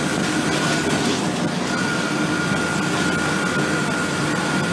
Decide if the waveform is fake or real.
real